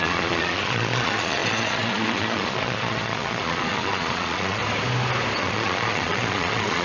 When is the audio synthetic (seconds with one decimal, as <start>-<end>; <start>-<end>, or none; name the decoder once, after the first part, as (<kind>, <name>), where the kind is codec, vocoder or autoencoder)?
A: 0.0-4.6 (vocoder, Vocos); 5.4-6.8